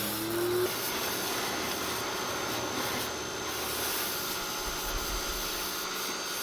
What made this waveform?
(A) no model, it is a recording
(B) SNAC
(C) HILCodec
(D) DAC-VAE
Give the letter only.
A